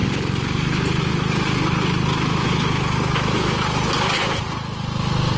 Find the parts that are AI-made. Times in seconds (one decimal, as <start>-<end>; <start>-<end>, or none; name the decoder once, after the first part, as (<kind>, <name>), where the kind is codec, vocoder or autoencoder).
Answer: 2.1-3.6 (autoencoder, DAC-VAE)